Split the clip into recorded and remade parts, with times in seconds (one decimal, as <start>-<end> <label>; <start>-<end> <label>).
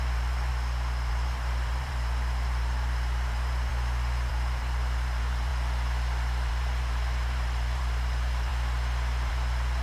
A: 0.0-0.5 remade; 0.5-1.1 recorded; 1.1-3.7 remade; 3.7-4.3 recorded; 4.3-5.5 remade; 5.5-6.5 recorded; 6.5-8.5 remade; 8.5-9.3 recorded; 9.3-9.8 remade